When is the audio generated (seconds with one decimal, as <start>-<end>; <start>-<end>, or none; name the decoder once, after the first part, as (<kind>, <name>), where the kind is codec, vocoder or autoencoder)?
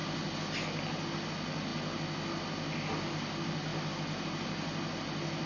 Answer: none